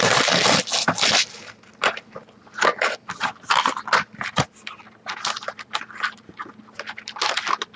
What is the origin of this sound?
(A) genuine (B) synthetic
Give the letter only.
A